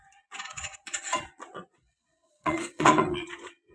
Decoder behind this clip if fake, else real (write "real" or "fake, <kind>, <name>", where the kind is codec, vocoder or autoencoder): fake, vocoder, Vocos